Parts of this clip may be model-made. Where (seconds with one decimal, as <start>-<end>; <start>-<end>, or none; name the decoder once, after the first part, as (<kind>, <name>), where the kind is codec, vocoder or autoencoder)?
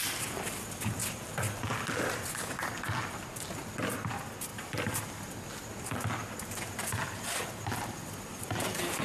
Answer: none